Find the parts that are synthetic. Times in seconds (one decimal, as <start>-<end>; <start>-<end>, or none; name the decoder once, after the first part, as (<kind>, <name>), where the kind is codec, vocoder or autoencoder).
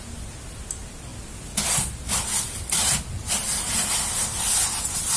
none